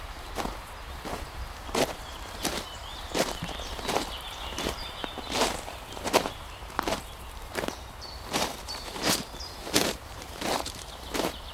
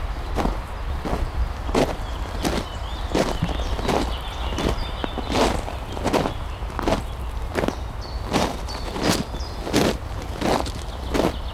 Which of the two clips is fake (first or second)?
first